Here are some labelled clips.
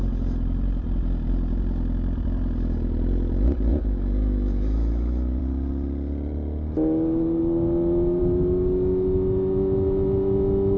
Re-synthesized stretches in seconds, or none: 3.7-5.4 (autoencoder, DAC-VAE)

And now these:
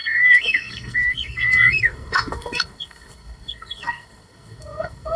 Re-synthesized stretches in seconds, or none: 0.0-5.2 (codec, SNAC)

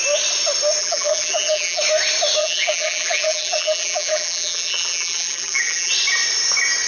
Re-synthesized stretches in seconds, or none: 0.8-1.8 (vocoder, BigVGAN v2); 2.4-5.9